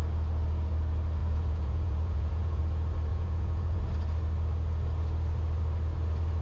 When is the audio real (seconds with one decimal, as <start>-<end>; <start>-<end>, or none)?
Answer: 0.0-1.2; 2.6-3.1; 3.8-6.4